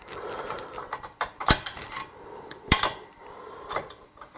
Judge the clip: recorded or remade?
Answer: remade